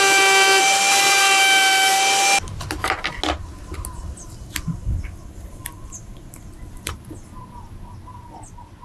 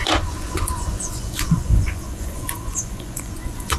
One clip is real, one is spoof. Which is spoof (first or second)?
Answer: second